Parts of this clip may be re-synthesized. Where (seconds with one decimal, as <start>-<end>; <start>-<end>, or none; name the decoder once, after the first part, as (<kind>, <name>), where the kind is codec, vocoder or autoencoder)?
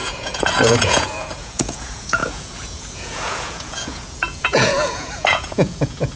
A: 0.0-6.2 (vocoder, Vocos)